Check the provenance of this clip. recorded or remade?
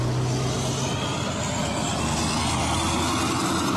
recorded